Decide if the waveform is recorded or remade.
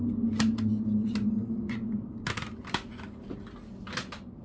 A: recorded